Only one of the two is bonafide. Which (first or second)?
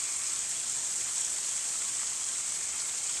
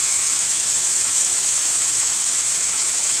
first